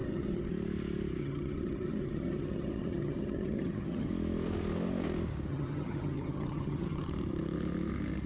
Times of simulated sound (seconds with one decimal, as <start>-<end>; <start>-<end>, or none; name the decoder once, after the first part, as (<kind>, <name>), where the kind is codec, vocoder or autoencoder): 0.0-0.5 (vocoder, HiFi-GAN); 1.2-4.1; 5.5-7.1